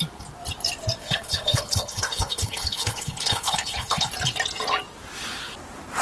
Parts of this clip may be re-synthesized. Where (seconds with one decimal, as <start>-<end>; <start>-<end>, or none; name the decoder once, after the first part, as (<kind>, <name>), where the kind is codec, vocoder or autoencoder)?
1.0-4.1 (codec, HILCodec)